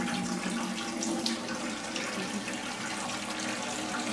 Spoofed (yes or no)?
no